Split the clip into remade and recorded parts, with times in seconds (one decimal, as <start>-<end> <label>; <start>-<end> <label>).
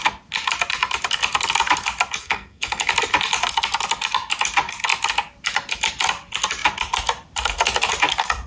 0.0-2.2 recorded; 2.2-2.9 remade; 2.9-8.5 recorded